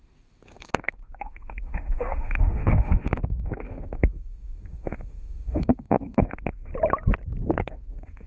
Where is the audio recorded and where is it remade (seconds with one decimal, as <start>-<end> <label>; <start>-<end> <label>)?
0.0-6.7 remade; 6.7-7.7 recorded; 7.7-8.3 remade